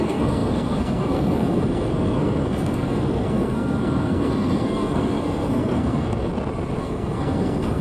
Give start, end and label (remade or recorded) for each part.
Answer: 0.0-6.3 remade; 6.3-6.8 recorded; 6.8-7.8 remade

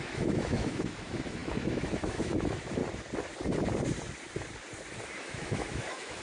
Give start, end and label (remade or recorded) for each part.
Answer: 0.0-2.8 remade; 2.8-5.2 recorded; 5.2-6.2 remade

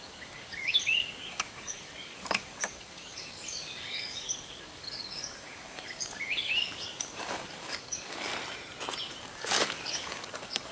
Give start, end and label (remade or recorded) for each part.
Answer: 0.0-8.3 remade; 8.3-9.2 recorded; 9.2-10.7 remade

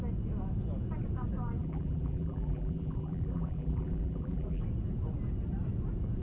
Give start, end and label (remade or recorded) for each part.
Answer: 0.0-1.6 recorded; 1.6-4.6 remade; 4.6-6.2 recorded

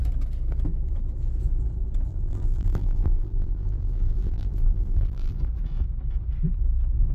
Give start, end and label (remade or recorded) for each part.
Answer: 0.0-2.1 recorded; 2.1-5.4 remade; 5.4-7.1 recorded

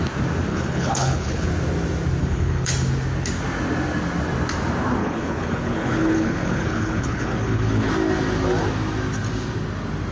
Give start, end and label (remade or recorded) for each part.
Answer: 0.0-0.5 recorded; 0.5-1.5 remade; 1.5-2.2 recorded; 2.2-2.7 remade; 2.7-5.0 recorded; 5.0-7.9 remade; 7.9-10.1 recorded